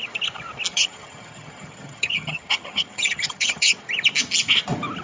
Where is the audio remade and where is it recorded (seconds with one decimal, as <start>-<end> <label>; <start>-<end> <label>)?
0.0-0.7 recorded; 0.7-3.7 remade; 3.7-5.0 recorded